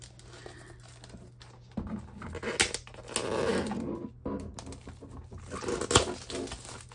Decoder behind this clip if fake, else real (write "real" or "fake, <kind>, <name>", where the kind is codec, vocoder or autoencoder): real